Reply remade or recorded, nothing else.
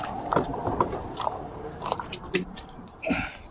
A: remade